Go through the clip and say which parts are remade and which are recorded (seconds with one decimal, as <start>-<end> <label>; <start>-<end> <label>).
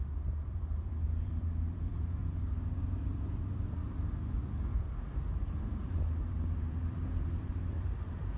0.0-2.2 remade; 2.2-2.8 recorded; 2.8-8.4 remade